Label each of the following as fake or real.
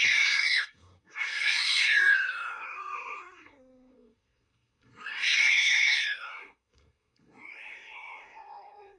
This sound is fake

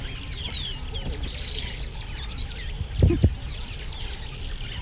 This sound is real